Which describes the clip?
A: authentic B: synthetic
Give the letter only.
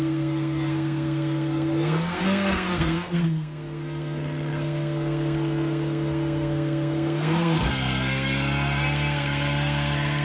B